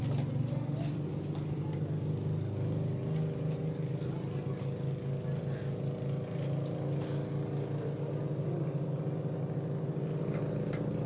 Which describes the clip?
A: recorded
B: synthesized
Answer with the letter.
A